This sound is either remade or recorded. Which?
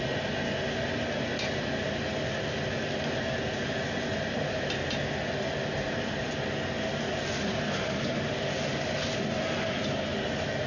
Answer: recorded